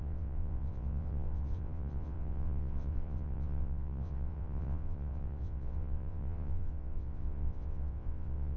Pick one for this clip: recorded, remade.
remade